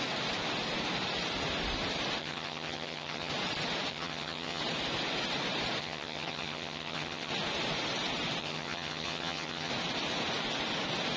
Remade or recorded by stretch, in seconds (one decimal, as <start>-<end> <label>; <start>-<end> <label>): 0.0-2.2 recorded; 2.2-3.3 remade; 3.3-3.9 recorded; 3.9-4.6 remade; 4.6-5.8 recorded; 5.8-7.3 remade; 7.3-8.4 recorded; 8.4-9.7 remade; 9.7-11.2 recorded